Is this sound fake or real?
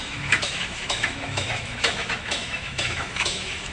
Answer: fake